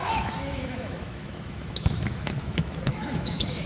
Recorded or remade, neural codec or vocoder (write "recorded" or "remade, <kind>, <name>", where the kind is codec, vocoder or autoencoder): remade, autoencoder, DAC-VAE